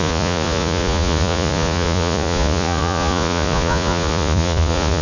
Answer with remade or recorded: remade